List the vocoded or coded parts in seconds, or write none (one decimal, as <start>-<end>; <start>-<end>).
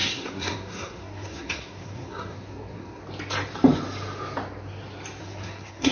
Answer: 0.0-3.0; 5.2-5.9